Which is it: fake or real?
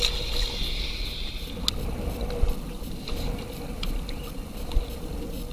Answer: real